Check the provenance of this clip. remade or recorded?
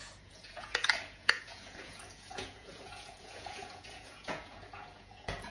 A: remade